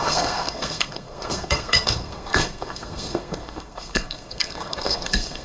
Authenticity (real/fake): fake